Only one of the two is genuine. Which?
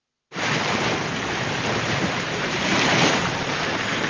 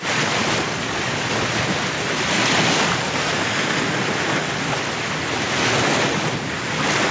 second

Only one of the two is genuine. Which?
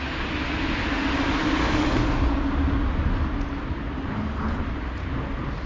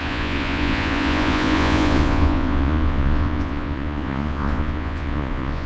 first